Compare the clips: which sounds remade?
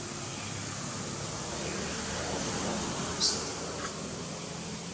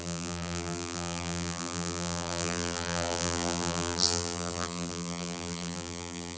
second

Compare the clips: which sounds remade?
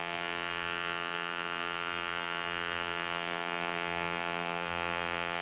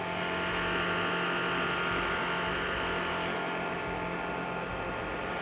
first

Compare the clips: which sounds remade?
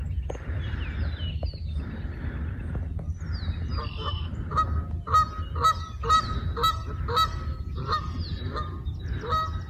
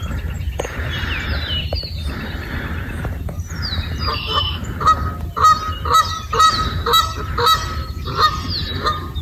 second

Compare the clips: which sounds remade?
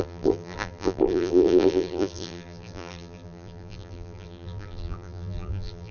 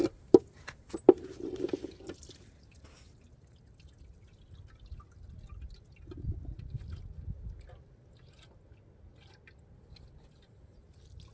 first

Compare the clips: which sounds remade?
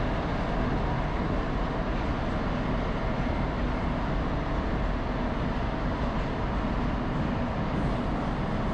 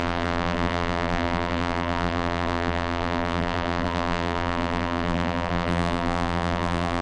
second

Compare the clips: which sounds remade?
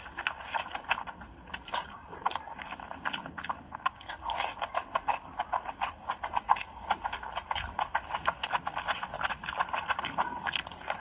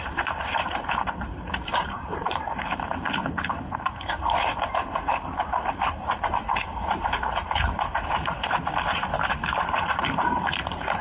second